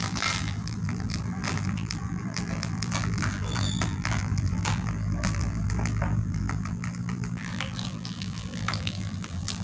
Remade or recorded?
remade